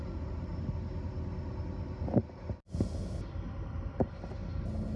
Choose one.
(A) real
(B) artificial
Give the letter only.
A